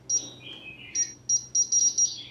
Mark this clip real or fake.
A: real